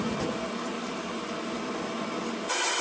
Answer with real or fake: real